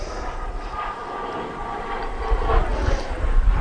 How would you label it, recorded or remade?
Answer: recorded